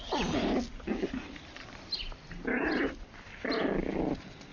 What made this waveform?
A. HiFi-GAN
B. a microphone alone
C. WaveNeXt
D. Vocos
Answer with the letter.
B